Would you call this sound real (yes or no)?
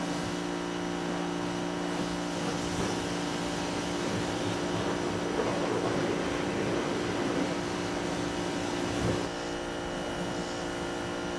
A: yes